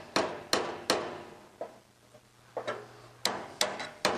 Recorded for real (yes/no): yes